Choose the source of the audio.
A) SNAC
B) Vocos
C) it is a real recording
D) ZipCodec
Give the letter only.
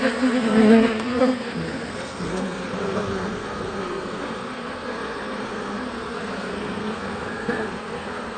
A